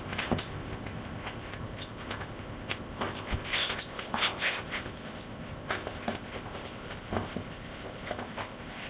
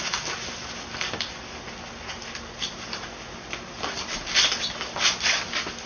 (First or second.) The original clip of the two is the second